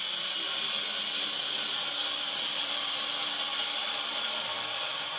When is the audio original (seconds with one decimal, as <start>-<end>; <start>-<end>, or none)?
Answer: 0.0-5.2